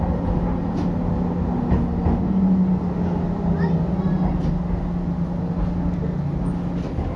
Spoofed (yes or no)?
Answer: no